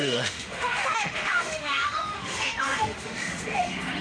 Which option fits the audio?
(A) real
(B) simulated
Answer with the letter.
B